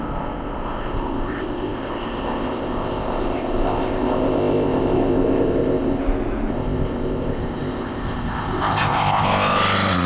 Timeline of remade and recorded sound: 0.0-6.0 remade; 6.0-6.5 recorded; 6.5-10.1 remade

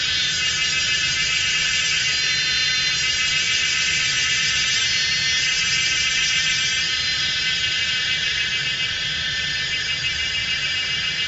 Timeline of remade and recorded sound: 0.0-11.3 recorded